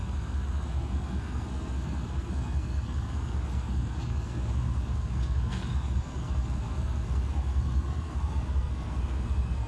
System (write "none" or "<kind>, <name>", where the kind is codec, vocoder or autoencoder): codec, SNAC